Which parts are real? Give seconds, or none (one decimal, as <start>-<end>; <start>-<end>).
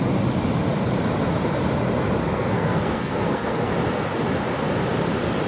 0.0-2.2; 3.7-5.5